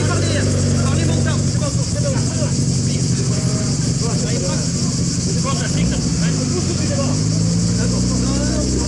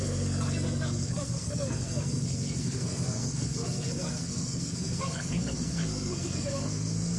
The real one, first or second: first